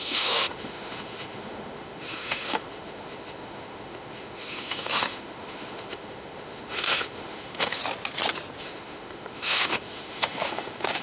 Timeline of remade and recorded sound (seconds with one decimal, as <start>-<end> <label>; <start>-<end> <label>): 0.0-7.8 remade; 7.8-8.6 recorded; 8.6-11.0 remade